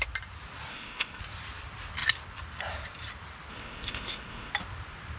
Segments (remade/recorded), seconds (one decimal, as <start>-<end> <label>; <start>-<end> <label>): 0.0-0.7 recorded; 0.7-1.2 remade; 1.2-3.5 recorded; 3.5-4.5 remade; 4.5-5.2 recorded